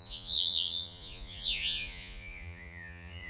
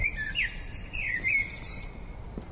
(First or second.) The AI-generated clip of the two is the first